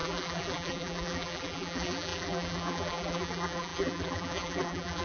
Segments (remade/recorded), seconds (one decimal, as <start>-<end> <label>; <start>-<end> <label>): 0.0-5.0 remade